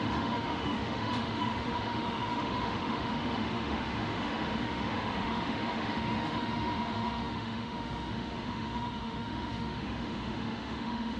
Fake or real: fake